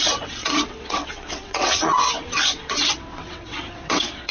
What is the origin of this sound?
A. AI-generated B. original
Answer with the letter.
A